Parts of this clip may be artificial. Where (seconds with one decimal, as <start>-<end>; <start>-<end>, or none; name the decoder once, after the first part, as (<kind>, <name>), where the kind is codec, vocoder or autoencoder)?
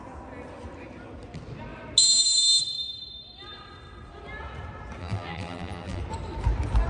5.0-6.0 (vocoder, BigVGAN v2)